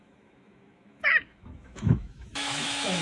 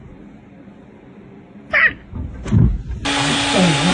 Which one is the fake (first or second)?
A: first